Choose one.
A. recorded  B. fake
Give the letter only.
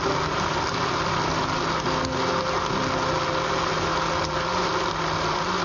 A